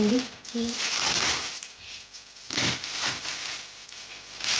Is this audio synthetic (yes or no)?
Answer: no